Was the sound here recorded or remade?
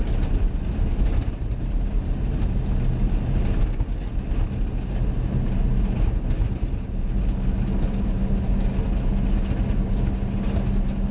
recorded